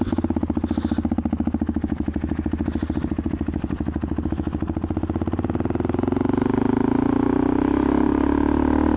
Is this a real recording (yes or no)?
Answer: yes